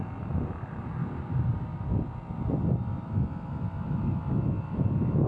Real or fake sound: real